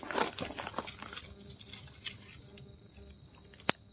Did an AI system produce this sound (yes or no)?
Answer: no